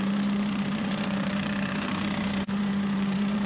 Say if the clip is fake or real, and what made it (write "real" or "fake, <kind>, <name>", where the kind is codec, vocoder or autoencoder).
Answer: fake, vocoder, BigVGAN v2